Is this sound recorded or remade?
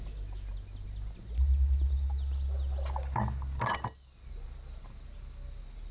recorded